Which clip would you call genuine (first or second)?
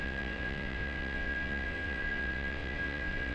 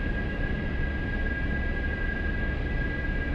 second